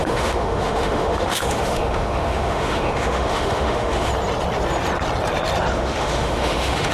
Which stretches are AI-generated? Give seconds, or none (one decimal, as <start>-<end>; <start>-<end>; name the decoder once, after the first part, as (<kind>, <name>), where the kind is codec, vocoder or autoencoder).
0.0-4.1 (autoencoder, DAC-VAE); 5.7-6.9

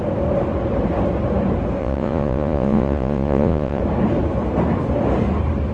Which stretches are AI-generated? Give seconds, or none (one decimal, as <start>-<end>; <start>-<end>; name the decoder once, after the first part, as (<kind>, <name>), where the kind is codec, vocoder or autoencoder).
1.8-3.8 (vocoder, Vocos)

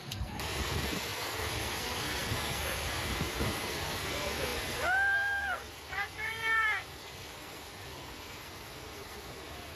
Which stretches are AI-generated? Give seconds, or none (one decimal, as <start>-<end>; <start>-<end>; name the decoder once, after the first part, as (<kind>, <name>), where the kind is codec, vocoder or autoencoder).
0.0-9.7 (codec, SNAC)

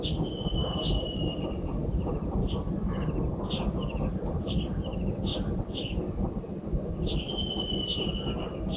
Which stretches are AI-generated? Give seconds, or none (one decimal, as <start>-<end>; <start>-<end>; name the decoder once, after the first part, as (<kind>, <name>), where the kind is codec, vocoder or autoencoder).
0.6-1.8 (vocoder, BigVGAN v2); 2.4-3.5; 4.1-4.7; 5.3-6.0

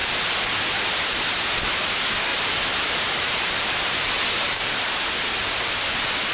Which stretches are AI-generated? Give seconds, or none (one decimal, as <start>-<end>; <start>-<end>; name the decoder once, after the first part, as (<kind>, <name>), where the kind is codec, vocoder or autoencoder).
2.3-4.9 (vocoder, BigVGAN v2)

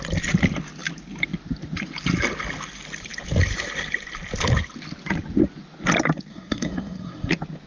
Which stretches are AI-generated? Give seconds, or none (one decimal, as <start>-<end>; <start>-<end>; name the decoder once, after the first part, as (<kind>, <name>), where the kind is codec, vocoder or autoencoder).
6.3-7.3 (codec, SNAC)